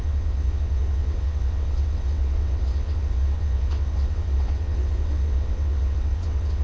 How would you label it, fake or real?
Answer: fake